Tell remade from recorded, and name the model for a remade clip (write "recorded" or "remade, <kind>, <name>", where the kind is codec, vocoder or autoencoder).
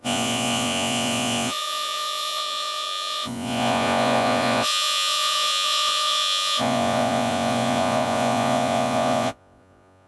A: remade, vocoder, Vocos